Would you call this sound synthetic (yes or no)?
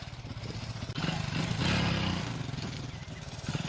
no